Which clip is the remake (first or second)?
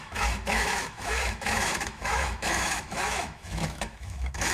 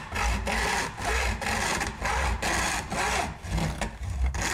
first